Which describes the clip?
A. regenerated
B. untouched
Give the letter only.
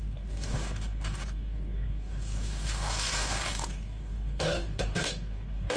A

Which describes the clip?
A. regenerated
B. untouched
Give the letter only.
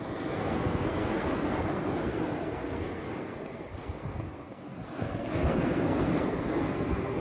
A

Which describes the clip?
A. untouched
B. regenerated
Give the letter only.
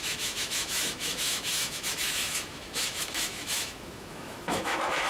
B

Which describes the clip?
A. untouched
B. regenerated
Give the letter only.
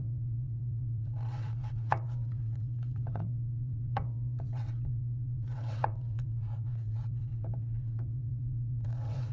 B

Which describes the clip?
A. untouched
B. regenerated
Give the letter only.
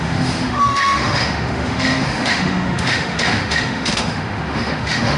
B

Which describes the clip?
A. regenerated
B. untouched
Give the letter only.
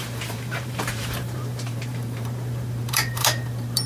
A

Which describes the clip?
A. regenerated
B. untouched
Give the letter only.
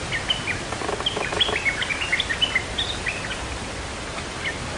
B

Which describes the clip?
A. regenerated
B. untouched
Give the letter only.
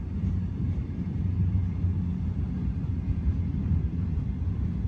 A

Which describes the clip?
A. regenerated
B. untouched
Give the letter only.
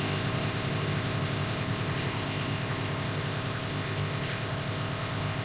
A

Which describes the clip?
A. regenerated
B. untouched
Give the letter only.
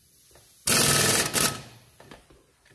B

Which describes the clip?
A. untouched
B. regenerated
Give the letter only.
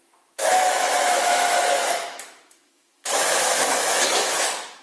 B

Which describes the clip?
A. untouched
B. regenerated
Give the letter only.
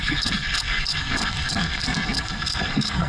B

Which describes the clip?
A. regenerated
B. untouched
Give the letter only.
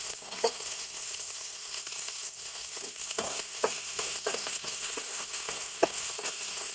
A